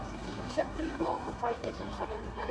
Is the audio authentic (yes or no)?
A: no